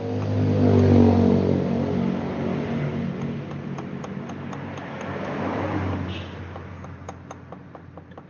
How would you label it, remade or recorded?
recorded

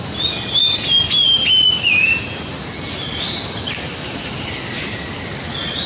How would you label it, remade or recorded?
recorded